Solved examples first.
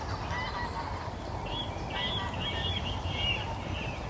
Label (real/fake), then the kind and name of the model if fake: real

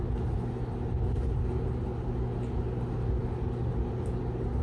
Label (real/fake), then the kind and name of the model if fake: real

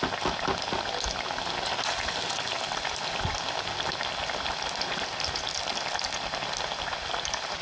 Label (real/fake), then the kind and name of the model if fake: real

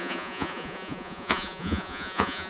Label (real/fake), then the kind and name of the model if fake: fake, vocoder, Vocos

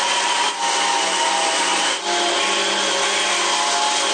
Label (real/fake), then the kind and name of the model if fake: real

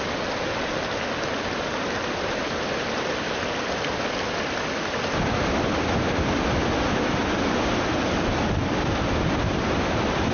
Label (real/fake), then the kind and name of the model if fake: real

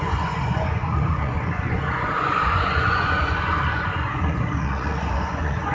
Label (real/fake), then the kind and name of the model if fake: fake, vocoder, Vocos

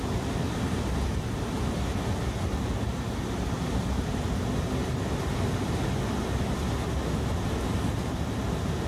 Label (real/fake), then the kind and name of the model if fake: real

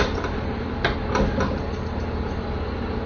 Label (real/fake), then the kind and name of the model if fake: real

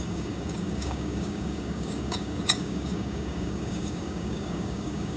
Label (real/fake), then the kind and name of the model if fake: fake, codec, DAC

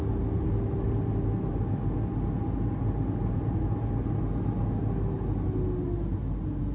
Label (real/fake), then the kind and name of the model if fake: real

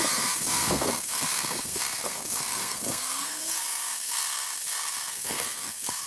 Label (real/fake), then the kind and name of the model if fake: fake, codec, SNAC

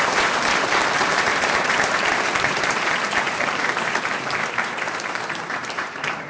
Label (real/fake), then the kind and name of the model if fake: fake, vocoder, BigVGAN v2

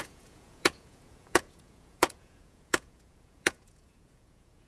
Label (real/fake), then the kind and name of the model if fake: fake, vocoder, Vocos